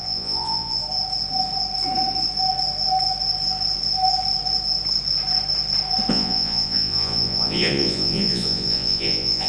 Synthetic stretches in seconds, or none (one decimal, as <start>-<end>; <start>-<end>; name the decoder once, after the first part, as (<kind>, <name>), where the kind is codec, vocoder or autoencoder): 0.0-0.8 (vocoder, Vocos); 6.1-9.5